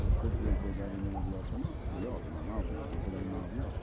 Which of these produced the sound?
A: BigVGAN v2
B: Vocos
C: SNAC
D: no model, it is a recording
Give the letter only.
D